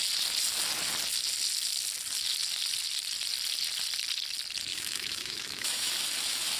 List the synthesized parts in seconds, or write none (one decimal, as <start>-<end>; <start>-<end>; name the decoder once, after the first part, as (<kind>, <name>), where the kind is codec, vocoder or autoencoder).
4.7-5.9 (autoencoder, DAC-VAE)